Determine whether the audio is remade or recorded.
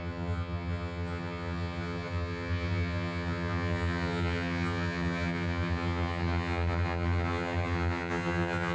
remade